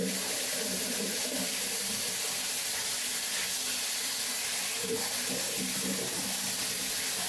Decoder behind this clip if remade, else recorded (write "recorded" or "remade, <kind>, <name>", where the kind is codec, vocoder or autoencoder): remade, vocoder, BigVGAN v2